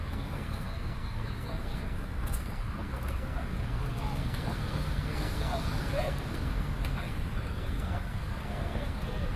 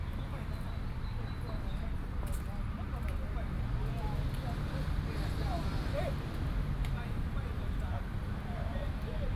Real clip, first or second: second